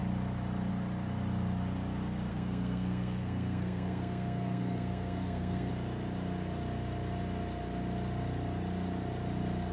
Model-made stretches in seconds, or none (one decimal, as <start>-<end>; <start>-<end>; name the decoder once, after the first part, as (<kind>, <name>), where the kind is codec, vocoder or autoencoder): 2.3-5.7 (codec, SNAC)